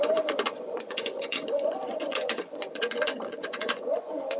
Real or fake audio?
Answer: fake